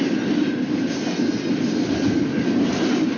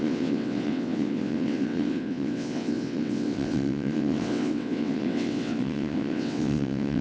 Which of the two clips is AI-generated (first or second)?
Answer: second